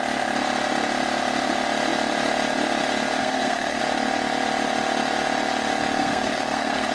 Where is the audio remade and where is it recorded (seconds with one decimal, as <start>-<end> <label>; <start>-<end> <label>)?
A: 0.0-3.2 recorded; 3.2-3.8 remade; 3.8-6.0 recorded; 6.0-6.9 remade